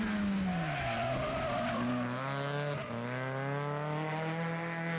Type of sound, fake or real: real